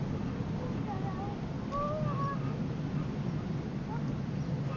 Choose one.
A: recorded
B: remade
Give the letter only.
A